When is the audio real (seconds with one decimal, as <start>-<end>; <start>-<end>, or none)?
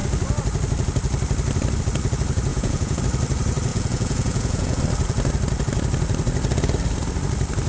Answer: 0.0-2.5; 3.0-3.7; 4.8-7.7